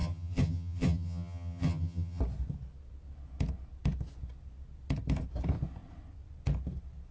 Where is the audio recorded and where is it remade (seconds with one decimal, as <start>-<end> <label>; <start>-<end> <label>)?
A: 0.0-2.2 remade; 2.2-7.1 recorded